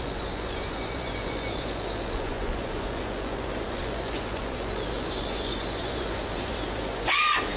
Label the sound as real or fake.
fake